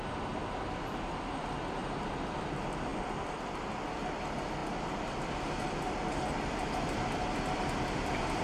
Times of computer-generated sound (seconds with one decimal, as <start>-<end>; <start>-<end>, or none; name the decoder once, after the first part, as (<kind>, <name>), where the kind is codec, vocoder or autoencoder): 1.8-2.4 (vocoder, BigVGAN v2)